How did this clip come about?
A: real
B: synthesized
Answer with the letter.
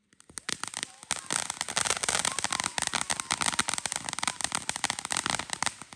A